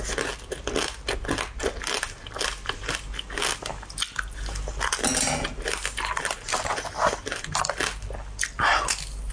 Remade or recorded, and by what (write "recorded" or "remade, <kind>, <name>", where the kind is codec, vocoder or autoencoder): recorded